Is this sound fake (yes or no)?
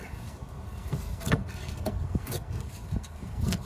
yes